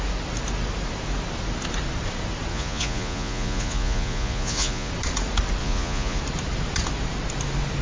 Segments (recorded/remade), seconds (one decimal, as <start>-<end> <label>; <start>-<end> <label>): 0.0-2.5 recorded; 2.5-4.9 remade; 4.9-5.6 recorded; 5.6-6.2 remade; 6.2-7.8 recorded